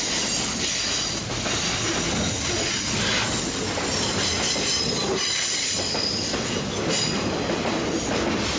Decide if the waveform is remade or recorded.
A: recorded